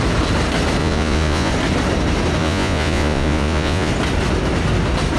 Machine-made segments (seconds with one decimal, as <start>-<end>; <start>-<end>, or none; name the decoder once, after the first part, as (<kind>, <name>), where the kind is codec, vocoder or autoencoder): 0.8-1.5 (vocoder, Vocos); 2.4-3.9